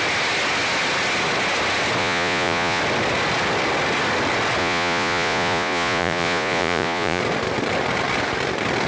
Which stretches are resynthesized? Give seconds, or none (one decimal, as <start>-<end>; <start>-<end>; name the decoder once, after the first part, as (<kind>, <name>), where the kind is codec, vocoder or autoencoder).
2.0-2.8 (vocoder, Vocos); 4.6-7.2